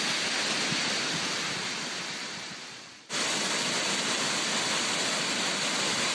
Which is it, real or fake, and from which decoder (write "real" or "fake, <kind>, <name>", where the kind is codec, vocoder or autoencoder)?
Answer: real